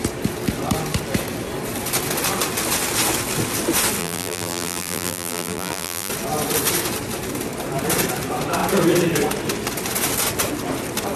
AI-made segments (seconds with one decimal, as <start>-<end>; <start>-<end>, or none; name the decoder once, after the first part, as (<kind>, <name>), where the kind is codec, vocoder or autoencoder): 4.0-6.1 (vocoder, BigVGAN v2)